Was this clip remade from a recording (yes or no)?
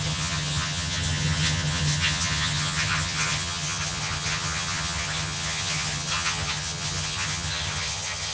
yes